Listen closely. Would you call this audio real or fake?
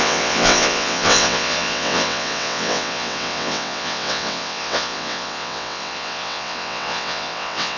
fake